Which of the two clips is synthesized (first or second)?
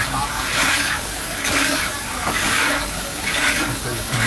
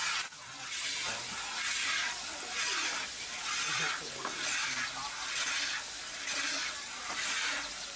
first